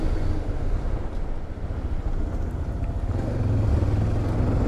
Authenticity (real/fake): real